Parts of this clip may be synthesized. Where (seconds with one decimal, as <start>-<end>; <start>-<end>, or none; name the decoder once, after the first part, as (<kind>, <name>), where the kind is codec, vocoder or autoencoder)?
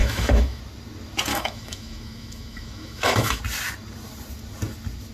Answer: 0.0-0.6 (autoencoder, DAC-VAE); 1.3-3.4